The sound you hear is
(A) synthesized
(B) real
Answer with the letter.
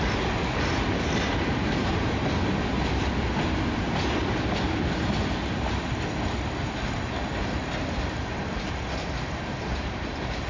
B